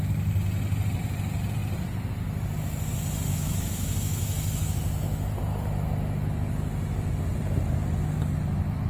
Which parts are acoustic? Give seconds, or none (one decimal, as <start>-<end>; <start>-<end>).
0.0-3.3; 5.3-8.9